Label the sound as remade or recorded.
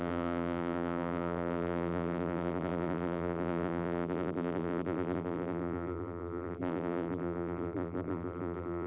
remade